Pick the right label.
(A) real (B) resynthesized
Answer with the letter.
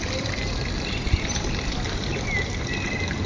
A